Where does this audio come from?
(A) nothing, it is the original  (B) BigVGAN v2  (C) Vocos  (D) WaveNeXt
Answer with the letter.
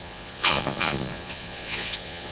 C